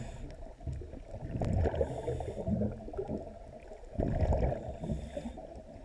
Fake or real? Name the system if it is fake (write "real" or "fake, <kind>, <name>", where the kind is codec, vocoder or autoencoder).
real